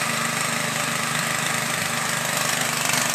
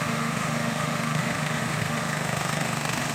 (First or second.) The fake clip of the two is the second